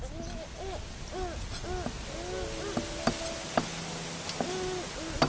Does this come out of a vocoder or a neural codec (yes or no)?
no